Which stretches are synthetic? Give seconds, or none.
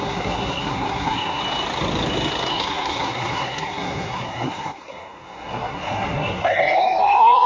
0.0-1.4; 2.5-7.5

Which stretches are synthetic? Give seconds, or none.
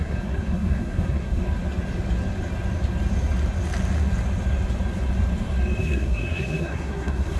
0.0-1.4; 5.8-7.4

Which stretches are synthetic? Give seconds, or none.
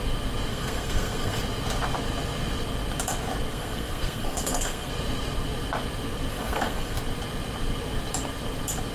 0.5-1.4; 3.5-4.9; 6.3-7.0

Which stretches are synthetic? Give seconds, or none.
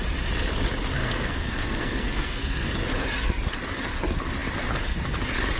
1.0-2.7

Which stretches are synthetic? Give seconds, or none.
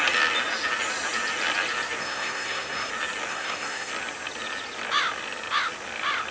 2.0-2.9; 3.3-3.9